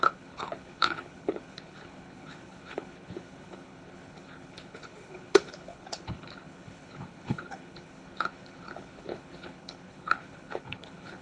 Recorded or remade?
remade